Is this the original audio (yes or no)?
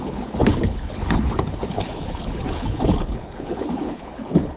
no